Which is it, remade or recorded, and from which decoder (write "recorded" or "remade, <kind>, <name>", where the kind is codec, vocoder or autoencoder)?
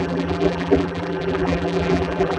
remade, vocoder, BigVGAN v2